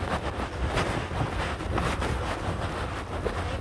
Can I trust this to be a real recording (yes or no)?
yes